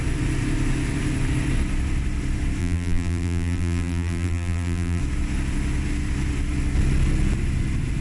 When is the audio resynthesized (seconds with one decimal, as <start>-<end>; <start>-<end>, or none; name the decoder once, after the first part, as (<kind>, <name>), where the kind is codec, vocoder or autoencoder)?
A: 2.6-5.0 (vocoder, BigVGAN v2)